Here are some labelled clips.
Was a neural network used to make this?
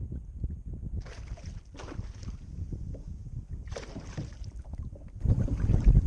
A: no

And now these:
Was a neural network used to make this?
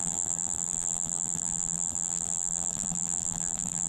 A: yes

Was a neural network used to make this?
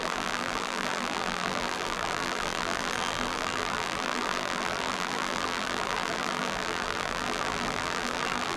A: yes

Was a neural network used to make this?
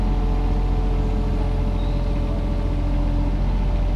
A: no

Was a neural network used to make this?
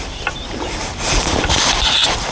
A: yes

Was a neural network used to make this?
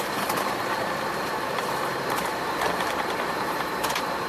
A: yes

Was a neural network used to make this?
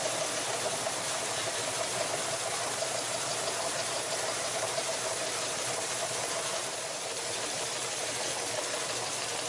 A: yes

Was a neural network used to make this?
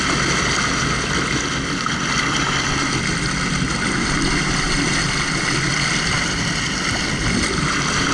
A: no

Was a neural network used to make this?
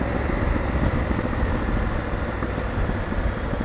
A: yes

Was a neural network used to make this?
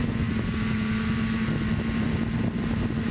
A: no